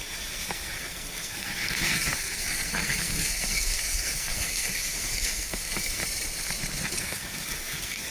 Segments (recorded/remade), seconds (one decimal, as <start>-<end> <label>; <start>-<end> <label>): 0.0-6.0 remade; 6.0-7.0 recorded; 7.0-8.1 remade